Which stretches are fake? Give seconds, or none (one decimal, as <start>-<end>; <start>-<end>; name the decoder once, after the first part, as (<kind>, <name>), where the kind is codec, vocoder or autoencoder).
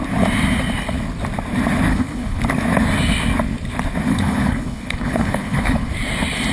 1.9-2.4 (codec, HILCodec); 4.1-5.9